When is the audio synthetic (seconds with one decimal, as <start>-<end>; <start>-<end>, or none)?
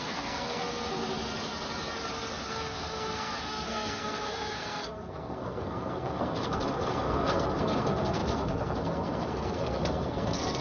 0.0-1.0; 2.5-10.6